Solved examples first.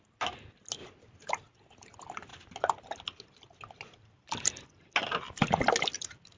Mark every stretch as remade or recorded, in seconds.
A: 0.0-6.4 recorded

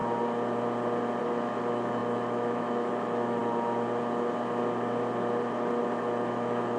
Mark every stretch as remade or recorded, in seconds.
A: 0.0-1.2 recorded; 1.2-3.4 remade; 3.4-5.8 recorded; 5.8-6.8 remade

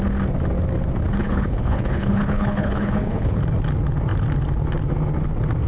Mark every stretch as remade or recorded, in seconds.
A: 0.0-1.2 recorded; 1.2-3.4 remade; 3.4-5.7 recorded

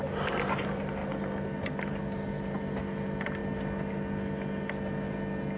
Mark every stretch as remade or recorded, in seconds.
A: 0.0-5.6 recorded